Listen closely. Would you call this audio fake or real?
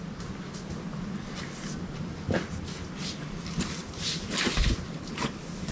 real